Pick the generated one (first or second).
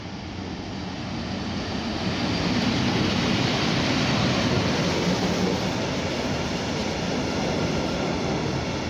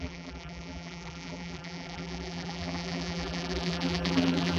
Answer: second